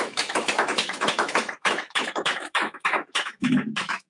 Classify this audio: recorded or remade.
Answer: remade